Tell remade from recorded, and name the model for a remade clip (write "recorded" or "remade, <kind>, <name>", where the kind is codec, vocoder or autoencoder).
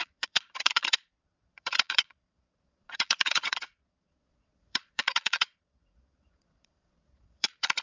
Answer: remade, vocoder, Vocos